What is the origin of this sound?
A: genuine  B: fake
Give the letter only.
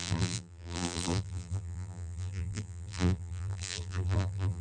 B